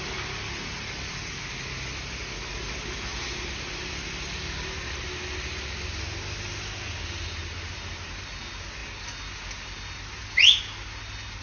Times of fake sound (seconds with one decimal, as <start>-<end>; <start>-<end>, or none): none